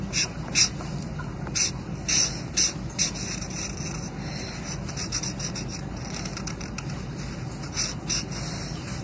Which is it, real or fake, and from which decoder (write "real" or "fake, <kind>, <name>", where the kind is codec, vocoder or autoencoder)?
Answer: real